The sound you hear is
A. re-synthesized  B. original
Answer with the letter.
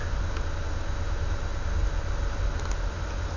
B